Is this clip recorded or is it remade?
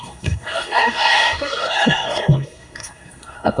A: remade